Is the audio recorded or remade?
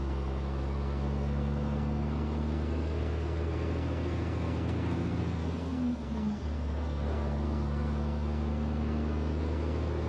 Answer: remade